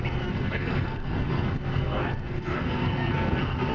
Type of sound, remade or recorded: remade